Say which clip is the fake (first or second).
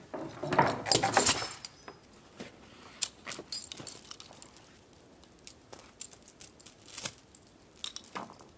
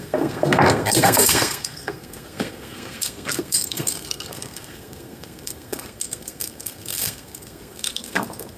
second